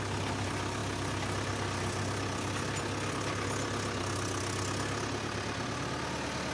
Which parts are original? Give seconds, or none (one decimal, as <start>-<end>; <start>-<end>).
0.0-6.5